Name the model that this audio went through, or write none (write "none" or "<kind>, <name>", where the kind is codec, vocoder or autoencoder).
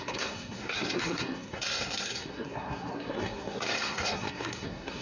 codec, SNAC